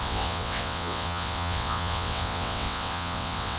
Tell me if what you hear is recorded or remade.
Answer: remade